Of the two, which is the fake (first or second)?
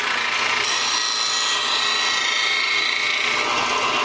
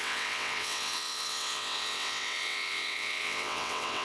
second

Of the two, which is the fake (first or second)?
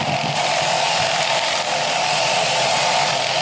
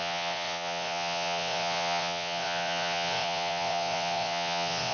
second